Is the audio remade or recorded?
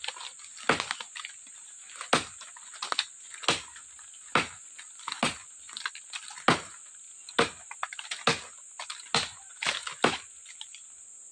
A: recorded